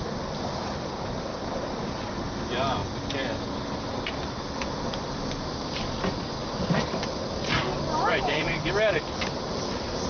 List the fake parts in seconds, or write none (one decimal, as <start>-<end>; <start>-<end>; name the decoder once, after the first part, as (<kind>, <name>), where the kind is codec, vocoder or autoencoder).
1.3-2.3 (vocoder, BigVGAN v2); 6.4-8.7